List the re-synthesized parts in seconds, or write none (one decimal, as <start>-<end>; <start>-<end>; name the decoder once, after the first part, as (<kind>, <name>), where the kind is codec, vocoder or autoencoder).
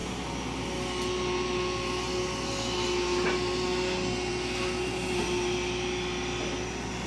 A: none